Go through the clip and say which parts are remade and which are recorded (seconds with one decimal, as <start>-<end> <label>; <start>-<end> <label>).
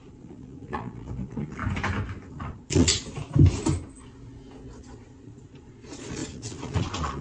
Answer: 0.0-1.6 remade; 1.6-2.3 recorded; 2.3-2.9 remade; 2.9-4.8 recorded; 4.8-7.2 remade